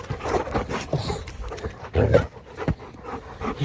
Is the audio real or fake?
real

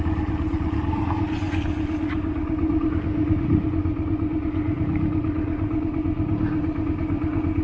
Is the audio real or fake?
real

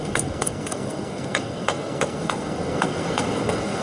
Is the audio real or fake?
fake